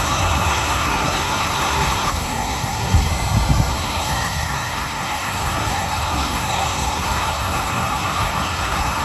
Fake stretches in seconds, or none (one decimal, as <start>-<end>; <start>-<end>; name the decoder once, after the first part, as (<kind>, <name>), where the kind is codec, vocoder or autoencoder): 0.0-3.1 (codec, SNAC); 3.7-9.0